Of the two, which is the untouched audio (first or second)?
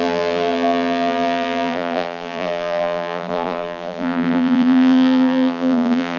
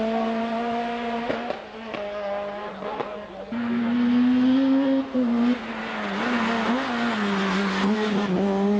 second